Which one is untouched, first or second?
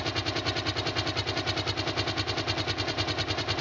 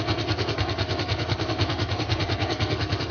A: first